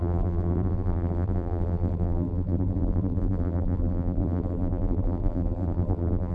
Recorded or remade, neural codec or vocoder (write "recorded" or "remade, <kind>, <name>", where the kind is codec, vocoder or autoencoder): remade, vocoder, BigVGAN v2